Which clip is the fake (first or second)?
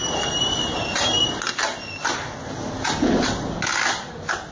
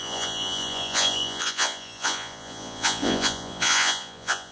second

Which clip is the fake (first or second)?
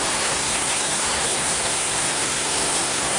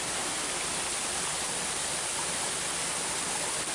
first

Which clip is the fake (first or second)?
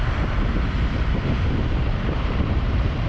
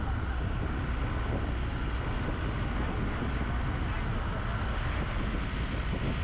first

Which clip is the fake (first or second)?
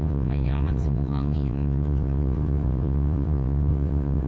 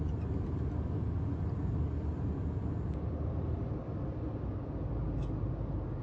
first